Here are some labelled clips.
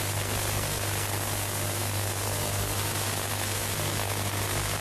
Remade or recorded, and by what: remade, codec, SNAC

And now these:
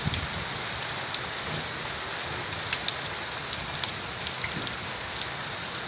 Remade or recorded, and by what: recorded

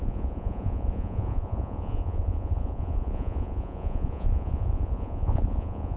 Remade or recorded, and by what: remade, vocoder, Vocos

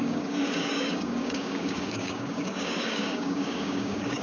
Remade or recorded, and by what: remade, codec, DAC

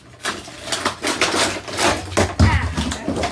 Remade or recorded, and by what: recorded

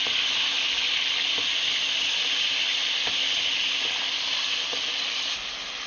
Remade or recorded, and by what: recorded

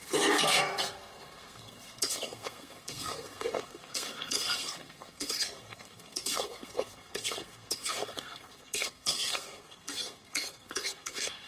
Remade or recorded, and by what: remade, codec, SNAC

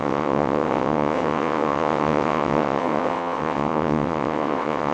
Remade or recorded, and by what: remade, vocoder, WaveNeXt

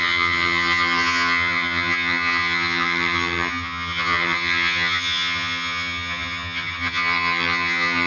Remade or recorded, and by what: remade, vocoder, HiFi-GAN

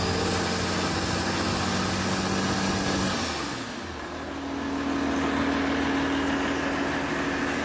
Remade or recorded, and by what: recorded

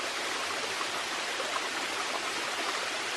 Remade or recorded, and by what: recorded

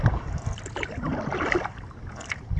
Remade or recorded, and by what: recorded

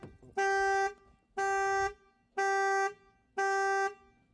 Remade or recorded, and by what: recorded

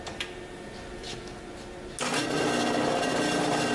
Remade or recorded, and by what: recorded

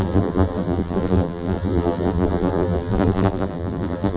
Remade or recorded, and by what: remade, vocoder, BigVGAN v2